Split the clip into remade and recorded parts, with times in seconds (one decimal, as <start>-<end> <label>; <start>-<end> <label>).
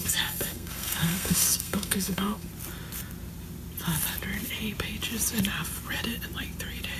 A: 0.0-2.5 remade; 2.5-7.0 recorded